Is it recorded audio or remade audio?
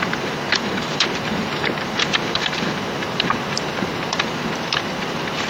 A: remade